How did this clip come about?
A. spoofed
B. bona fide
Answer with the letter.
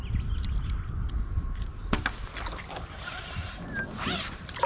B